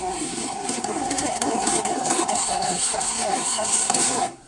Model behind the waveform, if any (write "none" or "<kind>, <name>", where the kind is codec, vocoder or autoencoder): codec, SNAC